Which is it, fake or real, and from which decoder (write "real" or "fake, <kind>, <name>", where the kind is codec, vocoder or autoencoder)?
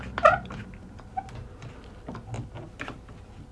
real